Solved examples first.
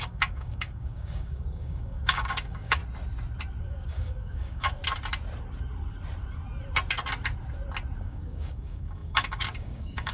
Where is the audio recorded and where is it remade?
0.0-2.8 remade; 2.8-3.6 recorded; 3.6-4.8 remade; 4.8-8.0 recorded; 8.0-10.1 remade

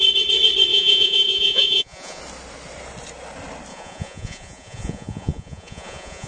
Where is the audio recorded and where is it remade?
0.0-0.7 recorded; 0.7-2.2 remade; 2.2-3.7 recorded; 3.7-6.3 remade

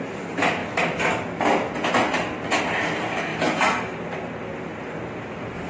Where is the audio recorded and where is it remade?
0.0-0.6 remade; 0.6-2.7 recorded; 2.7-3.3 remade; 3.3-5.3 recorded; 5.3-5.7 remade

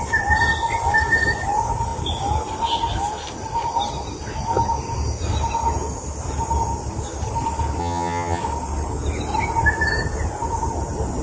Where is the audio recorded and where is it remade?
0.0-7.8 recorded; 7.8-8.4 remade; 8.4-11.2 recorded

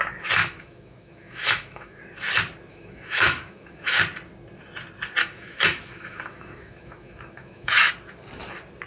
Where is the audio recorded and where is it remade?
0.0-0.4 recorded; 0.4-2.0 remade; 2.0-2.7 recorded; 2.7-4.0 remade; 4.0-5.2 recorded; 5.2-7.9 remade; 7.9-8.9 recorded